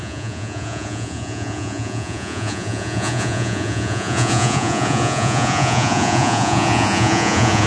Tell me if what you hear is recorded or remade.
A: remade